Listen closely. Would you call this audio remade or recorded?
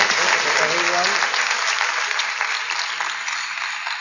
recorded